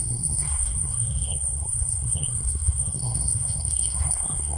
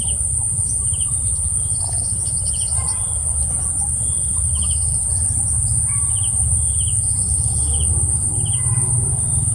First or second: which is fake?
first